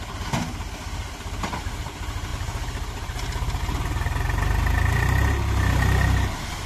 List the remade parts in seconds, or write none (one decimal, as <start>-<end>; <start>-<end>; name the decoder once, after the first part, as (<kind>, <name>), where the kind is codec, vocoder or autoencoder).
none